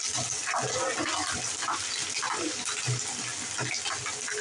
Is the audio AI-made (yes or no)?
no